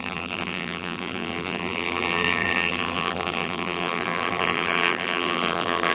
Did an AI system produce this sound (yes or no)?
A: yes